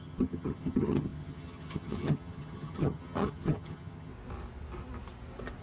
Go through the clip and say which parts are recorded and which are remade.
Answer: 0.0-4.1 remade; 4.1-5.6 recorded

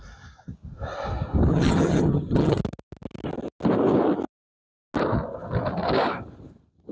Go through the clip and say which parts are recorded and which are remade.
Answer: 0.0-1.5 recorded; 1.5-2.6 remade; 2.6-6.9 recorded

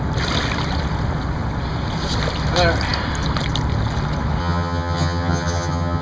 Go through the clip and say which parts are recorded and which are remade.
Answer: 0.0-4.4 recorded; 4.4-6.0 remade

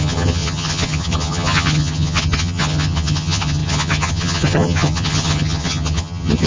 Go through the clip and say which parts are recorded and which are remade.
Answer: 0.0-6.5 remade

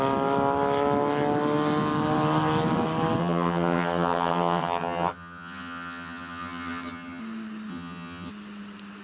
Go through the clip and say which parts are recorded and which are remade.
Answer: 0.0-3.2 recorded; 3.2-7.2 remade; 7.2-7.7 recorded; 7.7-8.3 remade; 8.3-9.0 recorded

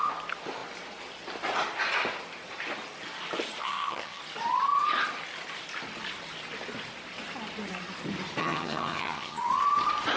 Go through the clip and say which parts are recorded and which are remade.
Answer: 0.0-3.6 recorded; 3.6-4.2 remade; 4.2-8.4 recorded; 8.4-9.5 remade; 9.5-10.2 recorded